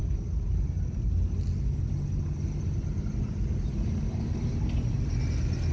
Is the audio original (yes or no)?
yes